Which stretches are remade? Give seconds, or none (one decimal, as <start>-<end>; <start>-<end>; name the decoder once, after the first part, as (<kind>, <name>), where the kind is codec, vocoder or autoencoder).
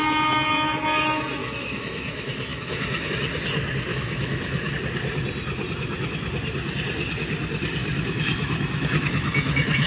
1.4-3.1 (autoencoder, DAC-VAE); 3.9-4.7; 7.8-9.9